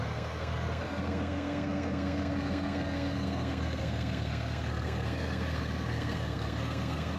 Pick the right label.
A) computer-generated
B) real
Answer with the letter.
A